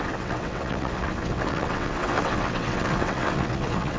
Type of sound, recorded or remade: remade